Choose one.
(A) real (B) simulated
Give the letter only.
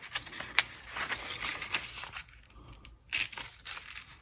A